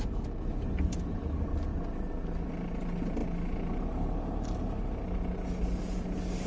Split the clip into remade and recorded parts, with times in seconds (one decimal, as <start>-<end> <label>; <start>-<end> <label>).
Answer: 0.0-6.5 recorded